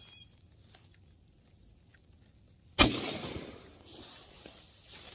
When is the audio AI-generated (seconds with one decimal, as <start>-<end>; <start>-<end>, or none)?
none